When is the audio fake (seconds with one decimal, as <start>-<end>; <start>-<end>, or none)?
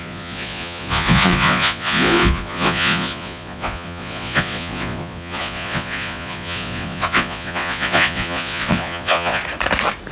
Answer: 0.0-9.4